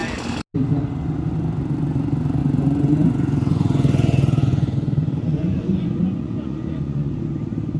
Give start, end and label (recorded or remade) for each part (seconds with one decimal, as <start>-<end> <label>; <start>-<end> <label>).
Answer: 0.0-2.4 recorded; 2.4-7.1 remade; 7.1-7.8 recorded